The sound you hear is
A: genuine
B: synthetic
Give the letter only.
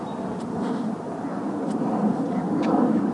A